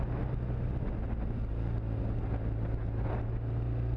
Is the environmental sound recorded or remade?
recorded